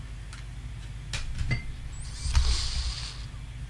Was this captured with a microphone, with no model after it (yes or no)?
yes